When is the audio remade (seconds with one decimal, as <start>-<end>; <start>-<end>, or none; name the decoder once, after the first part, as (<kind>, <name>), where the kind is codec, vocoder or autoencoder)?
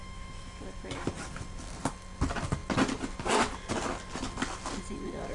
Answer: 0.0-0.6 (autoencoder, DAC-VAE)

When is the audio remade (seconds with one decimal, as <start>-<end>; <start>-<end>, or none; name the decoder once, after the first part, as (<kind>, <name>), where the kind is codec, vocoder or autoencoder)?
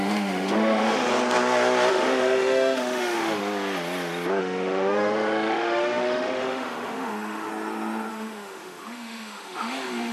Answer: 0.0-1.1 (autoencoder, DAC-VAE); 1.9-3.4; 4.4-7.5; 8.1-10.1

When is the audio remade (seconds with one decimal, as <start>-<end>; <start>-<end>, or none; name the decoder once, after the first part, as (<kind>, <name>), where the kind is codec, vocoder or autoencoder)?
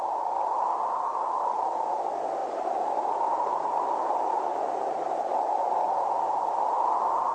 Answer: none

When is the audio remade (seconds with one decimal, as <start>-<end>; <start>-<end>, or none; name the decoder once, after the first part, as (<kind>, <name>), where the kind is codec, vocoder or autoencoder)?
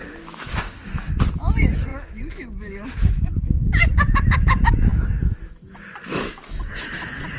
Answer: 0.0-7.4 (autoencoder, DAC-VAE)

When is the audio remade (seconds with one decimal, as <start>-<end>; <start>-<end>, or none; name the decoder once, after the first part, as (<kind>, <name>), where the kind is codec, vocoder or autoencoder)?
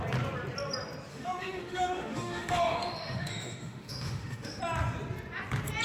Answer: 1.1-4.6 (autoencoder, DAC-VAE)